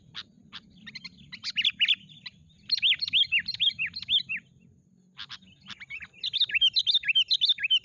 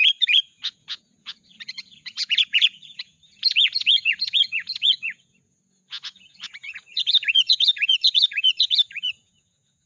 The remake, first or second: second